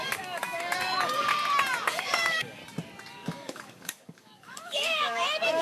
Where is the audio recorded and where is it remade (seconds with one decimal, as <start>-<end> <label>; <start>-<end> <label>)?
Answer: 0.0-1.3 remade; 1.3-1.9 recorded; 1.9-2.6 remade; 2.6-3.1 recorded; 3.1-5.6 remade